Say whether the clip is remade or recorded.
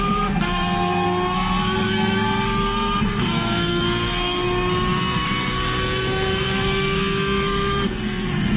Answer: remade